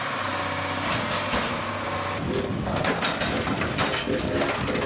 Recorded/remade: recorded